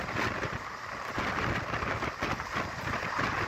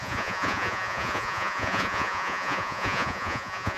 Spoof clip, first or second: second